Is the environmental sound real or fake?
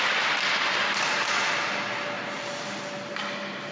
real